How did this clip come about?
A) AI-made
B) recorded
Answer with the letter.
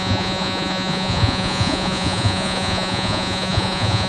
A